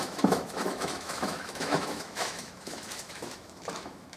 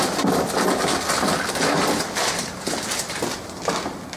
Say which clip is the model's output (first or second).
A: first